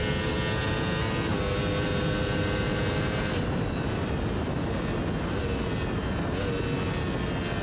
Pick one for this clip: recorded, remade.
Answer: recorded